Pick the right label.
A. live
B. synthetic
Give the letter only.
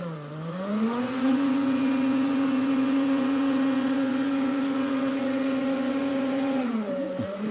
B